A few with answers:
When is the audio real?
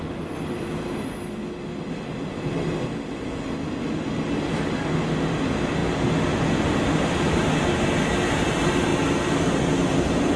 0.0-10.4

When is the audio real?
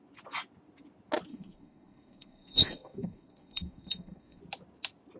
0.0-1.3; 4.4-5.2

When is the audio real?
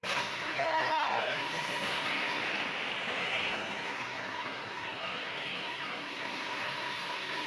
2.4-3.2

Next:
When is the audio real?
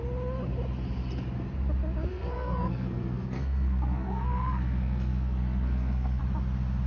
0.0-2.1; 6.2-6.9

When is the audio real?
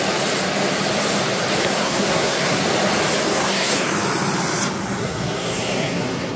0.0-1.6; 2.6-3.4; 3.9-5.0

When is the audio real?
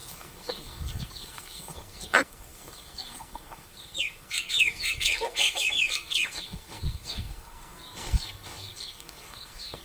none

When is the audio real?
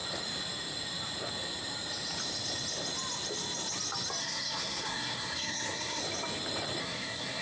0.0-4.2; 6.0-6.8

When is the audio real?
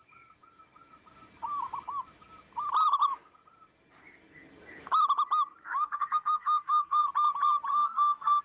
0.0-5.7; 7.1-7.7